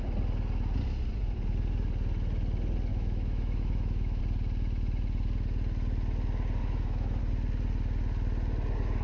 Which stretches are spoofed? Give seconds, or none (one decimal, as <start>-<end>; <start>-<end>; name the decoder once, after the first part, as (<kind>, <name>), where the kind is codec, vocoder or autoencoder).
2.9-4.2 (autoencoder, DAC-VAE); 6.6-7.2